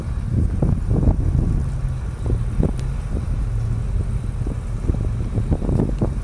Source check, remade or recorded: recorded